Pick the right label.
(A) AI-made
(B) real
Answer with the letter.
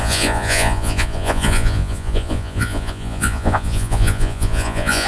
A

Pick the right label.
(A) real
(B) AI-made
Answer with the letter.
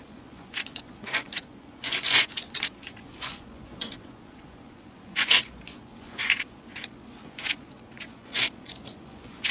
B